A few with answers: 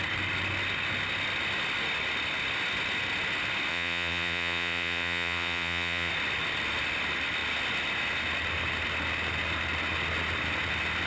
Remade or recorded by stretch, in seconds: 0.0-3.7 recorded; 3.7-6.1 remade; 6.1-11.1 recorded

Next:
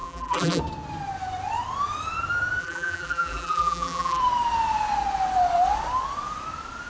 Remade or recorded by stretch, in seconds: 0.0-0.6 remade; 0.6-2.6 recorded; 2.6-4.2 remade; 4.2-6.9 recorded